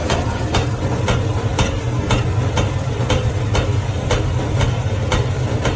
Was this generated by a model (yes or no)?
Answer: no